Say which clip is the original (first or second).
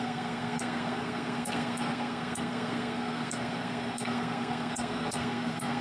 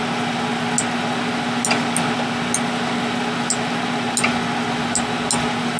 second